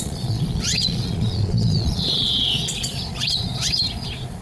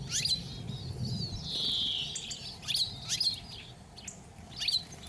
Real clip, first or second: second